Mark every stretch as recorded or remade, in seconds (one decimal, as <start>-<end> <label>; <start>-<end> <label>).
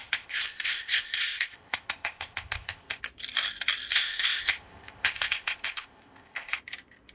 0.0-3.0 remade; 3.0-3.9 recorded; 3.9-6.6 remade; 6.6-7.1 recorded